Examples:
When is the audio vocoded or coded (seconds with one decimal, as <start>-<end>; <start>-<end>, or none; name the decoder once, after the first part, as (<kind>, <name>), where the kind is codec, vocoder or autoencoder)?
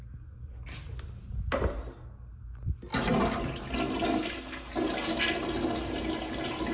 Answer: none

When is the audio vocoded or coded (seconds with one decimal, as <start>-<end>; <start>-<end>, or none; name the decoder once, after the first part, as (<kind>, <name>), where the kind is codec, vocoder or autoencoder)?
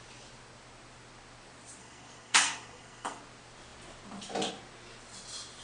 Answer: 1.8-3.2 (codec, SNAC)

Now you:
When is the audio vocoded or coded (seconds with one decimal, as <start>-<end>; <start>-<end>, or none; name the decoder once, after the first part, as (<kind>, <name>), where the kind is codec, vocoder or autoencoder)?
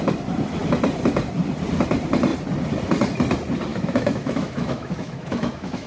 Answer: 3.7-5.9 (autoencoder, DAC-VAE)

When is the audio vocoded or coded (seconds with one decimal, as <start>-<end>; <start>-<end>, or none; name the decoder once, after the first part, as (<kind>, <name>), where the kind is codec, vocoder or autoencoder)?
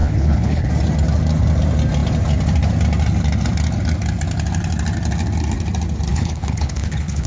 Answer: 0.0-0.7 (codec, HILCodec); 6.1-7.3